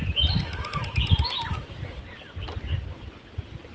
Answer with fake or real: fake